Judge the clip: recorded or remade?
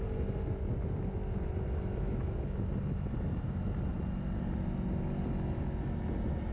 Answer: recorded